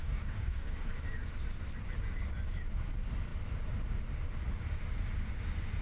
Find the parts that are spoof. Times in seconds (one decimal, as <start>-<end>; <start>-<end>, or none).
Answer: 0.0-0.9